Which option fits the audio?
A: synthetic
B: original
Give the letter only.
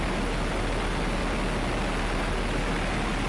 B